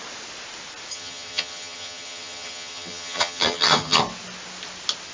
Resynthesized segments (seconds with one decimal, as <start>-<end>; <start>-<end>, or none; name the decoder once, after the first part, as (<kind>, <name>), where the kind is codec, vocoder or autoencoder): 0.9-4.0 (vocoder, HiFi-GAN)